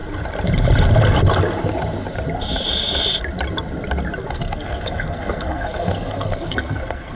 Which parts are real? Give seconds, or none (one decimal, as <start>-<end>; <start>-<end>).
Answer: 0.0-4.3